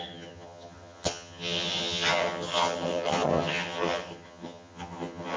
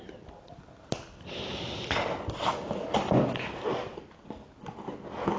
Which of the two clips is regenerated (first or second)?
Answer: first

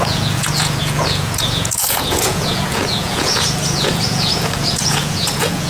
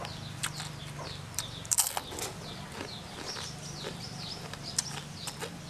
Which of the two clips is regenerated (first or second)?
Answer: first